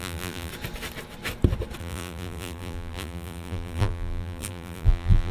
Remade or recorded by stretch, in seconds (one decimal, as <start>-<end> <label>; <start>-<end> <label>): 0.0-0.5 remade; 0.5-1.8 recorded; 1.8-5.3 remade